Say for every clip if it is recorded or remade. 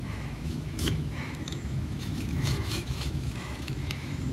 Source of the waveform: remade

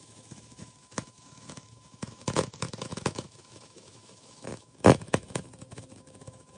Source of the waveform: remade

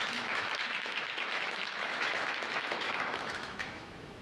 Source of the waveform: remade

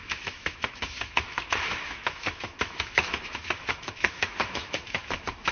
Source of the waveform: remade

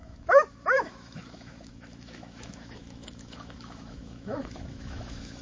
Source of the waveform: remade